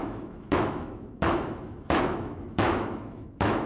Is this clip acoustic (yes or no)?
no